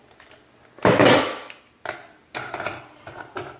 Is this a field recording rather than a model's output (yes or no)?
yes